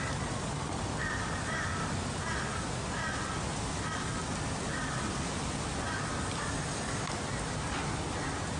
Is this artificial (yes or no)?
no